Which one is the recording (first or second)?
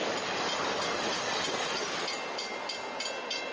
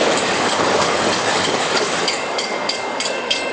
first